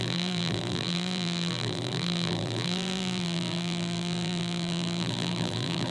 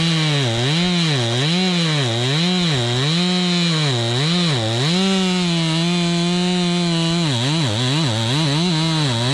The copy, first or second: first